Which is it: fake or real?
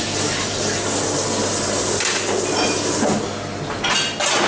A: real